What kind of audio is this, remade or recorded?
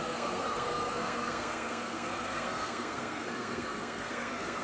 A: remade